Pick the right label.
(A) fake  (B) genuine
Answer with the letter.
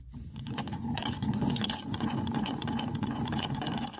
A